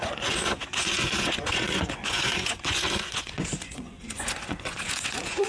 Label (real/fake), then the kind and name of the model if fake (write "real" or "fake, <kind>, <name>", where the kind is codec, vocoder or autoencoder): fake, vocoder, Vocos